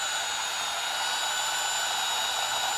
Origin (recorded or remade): recorded